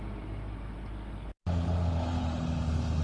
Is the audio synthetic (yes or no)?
no